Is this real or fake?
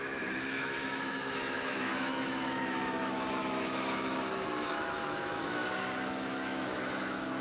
fake